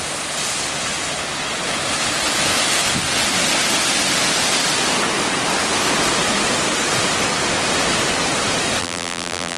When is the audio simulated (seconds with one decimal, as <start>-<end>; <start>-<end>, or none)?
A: 8.8-9.6